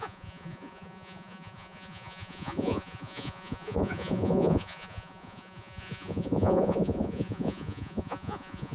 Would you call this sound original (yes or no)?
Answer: no